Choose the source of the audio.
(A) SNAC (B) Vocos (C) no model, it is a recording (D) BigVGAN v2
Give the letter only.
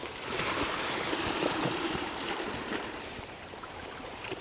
D